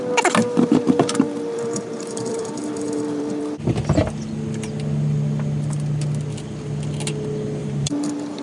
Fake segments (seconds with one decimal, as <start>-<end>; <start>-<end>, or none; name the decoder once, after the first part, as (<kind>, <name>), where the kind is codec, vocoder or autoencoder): 0.4-3.4 (vocoder, BigVGAN v2); 7.6-8.4